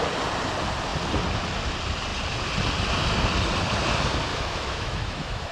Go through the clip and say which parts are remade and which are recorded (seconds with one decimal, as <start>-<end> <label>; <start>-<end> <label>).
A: 0.0-4.3 recorded; 4.3-5.5 remade